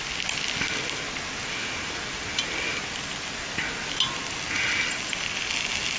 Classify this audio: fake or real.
real